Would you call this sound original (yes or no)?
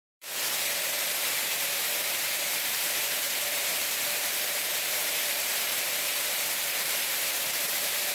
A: no